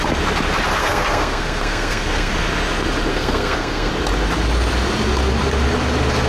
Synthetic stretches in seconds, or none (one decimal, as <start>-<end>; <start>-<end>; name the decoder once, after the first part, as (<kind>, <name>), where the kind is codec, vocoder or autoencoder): 0.8-2.3 (codec, SNAC); 3.1-3.9